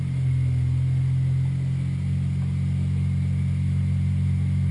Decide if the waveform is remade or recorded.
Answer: recorded